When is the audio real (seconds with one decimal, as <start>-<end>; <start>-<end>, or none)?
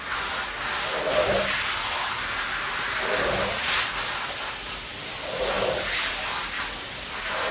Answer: 0.0-7.5